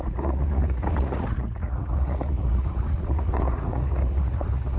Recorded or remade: remade